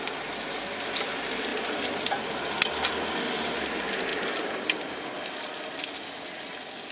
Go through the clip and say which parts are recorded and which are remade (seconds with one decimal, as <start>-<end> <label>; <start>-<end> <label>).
0.0-1.5 recorded; 1.5-2.9 remade; 2.9-4.1 recorded; 4.1-5.8 remade; 5.8-6.9 recorded